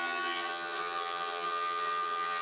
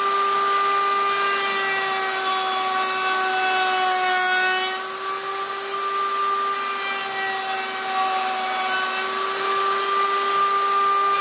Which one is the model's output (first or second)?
first